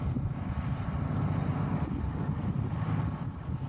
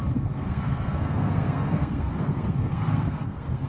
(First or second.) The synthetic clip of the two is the second